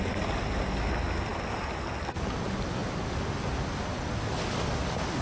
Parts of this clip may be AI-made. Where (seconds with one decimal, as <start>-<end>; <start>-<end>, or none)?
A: none